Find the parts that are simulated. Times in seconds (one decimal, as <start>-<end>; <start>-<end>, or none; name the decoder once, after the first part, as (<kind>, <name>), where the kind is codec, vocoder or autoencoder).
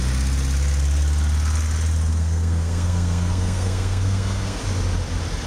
2.1-4.6 (codec, SNAC)